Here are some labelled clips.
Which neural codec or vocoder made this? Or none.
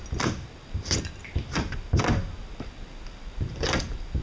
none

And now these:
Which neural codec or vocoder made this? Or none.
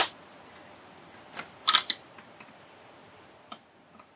none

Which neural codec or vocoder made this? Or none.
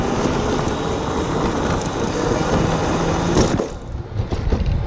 none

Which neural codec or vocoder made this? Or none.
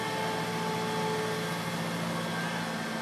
none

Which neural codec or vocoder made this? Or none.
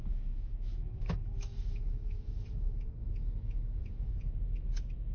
autoencoder, DAC-VAE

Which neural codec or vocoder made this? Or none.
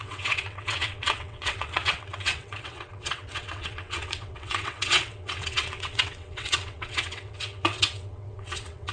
vocoder, WaveNeXt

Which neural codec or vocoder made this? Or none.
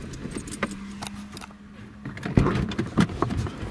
none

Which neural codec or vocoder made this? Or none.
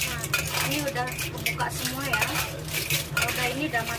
none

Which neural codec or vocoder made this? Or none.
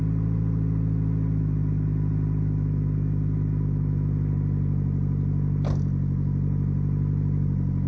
none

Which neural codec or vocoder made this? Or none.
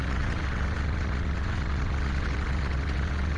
vocoder, WaveNeXt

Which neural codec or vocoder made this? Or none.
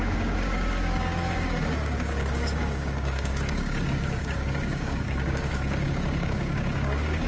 codec, DAC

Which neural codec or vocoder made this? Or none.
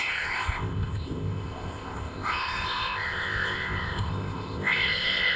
codec, ZipCodec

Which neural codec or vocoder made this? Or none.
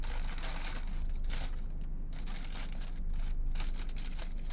none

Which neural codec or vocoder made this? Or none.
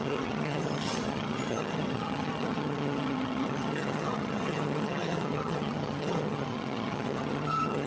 vocoder, HiFi-GAN